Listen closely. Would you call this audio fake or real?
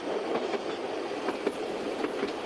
real